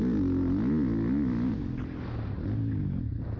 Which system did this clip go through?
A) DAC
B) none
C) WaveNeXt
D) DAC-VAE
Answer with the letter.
B